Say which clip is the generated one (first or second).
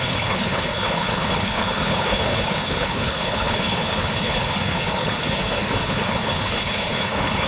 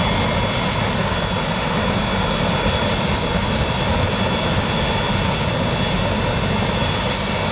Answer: first